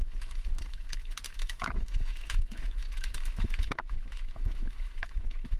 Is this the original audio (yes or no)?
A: no